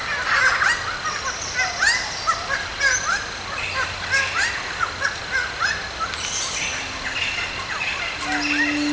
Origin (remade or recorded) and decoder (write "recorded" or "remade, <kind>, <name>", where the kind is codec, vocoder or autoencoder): recorded